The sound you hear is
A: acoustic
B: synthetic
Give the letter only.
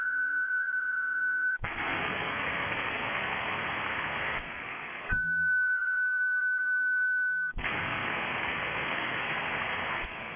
B